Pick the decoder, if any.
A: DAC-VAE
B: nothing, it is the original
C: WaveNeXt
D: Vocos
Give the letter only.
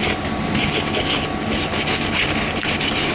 B